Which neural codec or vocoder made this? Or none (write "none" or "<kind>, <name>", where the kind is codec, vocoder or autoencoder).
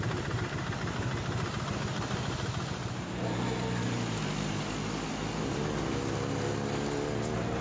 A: none